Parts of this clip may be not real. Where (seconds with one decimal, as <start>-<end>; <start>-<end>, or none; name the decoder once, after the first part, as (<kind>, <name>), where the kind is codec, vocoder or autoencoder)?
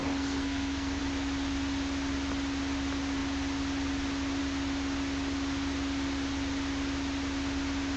0.0-1.0 (codec, SNAC)